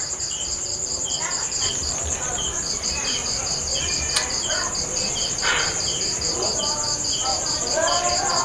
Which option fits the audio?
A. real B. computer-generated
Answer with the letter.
B